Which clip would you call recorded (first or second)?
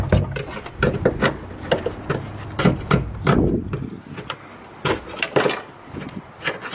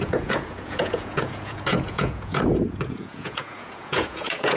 first